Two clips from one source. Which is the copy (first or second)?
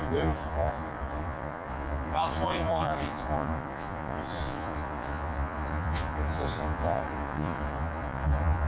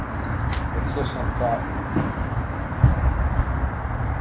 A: first